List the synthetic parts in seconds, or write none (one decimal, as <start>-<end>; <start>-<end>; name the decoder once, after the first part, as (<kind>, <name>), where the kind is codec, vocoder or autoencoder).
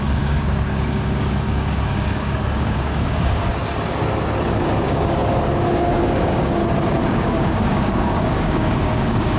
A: 0.0-3.6 (codec, DAC); 4.6-6.6; 7.2-9.4